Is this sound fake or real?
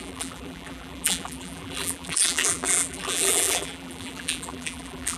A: fake